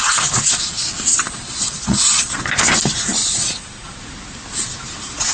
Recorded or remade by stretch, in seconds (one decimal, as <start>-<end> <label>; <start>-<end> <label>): 0.0-1.1 recorded; 1.1-2.3 remade; 2.3-3.2 recorded; 3.2-4.0 remade; 4.0-5.3 recorded